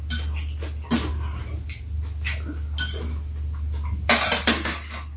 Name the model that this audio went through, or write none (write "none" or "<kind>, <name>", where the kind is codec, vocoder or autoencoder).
none